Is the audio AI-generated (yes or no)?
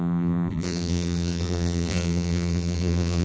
yes